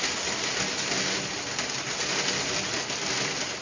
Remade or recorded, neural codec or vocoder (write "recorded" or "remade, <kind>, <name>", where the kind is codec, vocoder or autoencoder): recorded